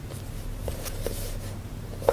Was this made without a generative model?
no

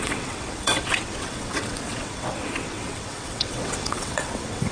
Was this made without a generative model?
no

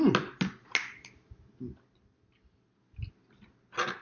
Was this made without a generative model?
yes